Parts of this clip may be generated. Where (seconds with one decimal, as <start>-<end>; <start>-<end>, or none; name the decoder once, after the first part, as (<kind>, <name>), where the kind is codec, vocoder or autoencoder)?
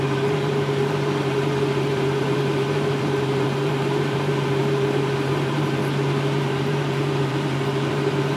0.0-5.8 (vocoder, BigVGAN v2); 6.4-8.4